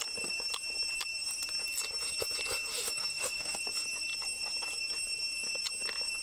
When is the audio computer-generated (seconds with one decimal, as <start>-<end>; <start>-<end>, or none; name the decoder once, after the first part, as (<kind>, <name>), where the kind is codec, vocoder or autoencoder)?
2.7-3.6 (autoencoder, DAC-VAE)